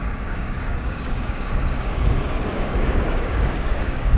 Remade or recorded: remade